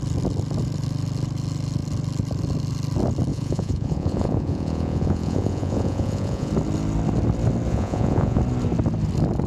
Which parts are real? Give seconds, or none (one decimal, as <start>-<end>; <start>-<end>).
0.0-3.3; 6.5-7.7; 8.4-9.5